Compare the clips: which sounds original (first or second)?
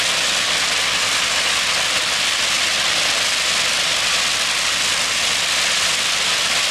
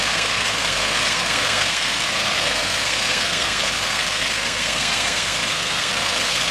first